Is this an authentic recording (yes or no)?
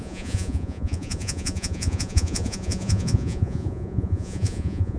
no